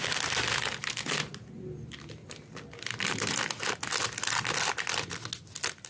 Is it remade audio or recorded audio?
recorded